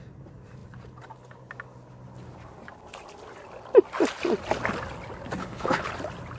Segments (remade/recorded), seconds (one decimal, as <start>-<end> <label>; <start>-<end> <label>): 0.0-5.4 recorded; 5.4-5.9 remade; 5.9-6.4 recorded